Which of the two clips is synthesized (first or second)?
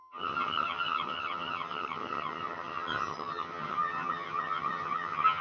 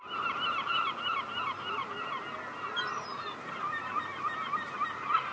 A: first